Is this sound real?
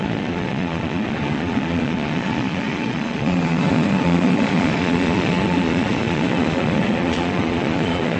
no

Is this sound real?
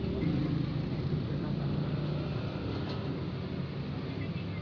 yes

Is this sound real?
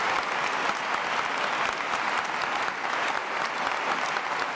yes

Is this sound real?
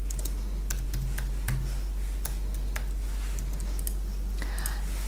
yes